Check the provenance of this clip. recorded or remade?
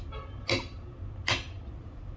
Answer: recorded